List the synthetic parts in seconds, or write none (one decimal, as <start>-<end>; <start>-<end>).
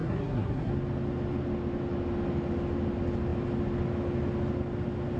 0.0-0.7